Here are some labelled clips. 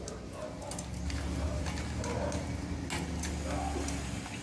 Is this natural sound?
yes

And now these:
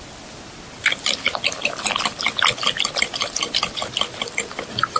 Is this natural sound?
yes